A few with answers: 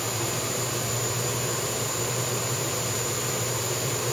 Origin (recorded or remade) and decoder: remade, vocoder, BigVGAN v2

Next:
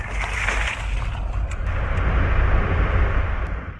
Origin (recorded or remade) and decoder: recorded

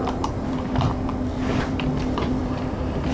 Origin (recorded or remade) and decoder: remade, vocoder, BigVGAN v2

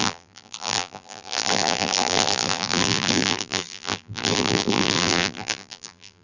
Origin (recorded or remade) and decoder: remade, vocoder, BigVGAN v2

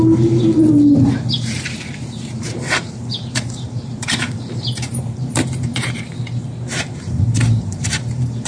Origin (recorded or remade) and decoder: remade, vocoder, BigVGAN v2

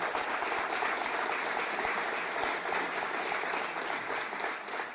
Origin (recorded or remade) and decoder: recorded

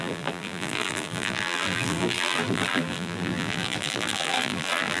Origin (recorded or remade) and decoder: remade, vocoder, BigVGAN v2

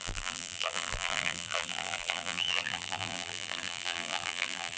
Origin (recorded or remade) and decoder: remade, vocoder, BigVGAN v2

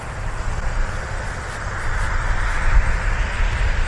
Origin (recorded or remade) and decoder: recorded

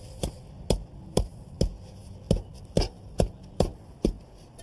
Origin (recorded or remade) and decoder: recorded